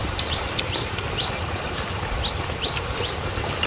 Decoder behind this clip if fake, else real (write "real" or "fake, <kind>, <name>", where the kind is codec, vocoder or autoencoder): fake, vocoder, BigVGAN v2